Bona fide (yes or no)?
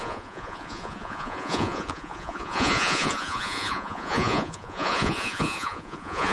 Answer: no